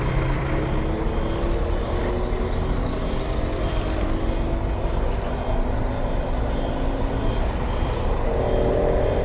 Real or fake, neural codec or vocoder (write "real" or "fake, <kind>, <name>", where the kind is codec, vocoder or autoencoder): real